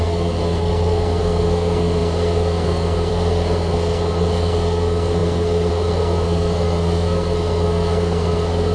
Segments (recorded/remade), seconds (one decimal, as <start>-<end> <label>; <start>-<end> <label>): 0.0-8.7 remade